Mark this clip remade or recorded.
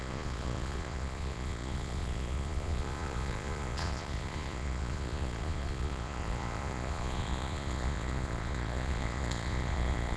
remade